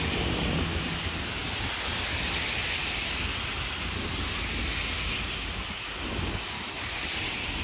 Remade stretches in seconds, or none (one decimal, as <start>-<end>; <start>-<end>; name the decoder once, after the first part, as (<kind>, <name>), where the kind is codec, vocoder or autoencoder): none